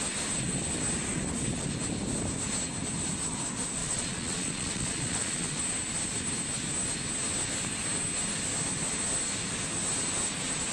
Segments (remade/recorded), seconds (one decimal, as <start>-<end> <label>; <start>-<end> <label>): 0.0-3.8 recorded; 3.8-5.6 remade; 5.6-10.7 recorded